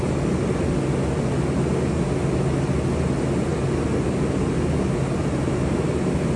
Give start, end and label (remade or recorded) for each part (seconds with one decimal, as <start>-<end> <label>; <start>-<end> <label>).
0.0-6.4 recorded